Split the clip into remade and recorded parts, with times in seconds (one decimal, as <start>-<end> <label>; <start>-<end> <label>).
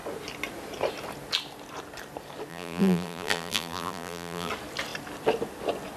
0.0-2.5 recorded; 2.5-4.5 remade; 4.5-6.0 recorded